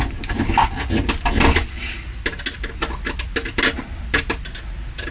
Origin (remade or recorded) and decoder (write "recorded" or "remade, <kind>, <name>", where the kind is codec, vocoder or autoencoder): recorded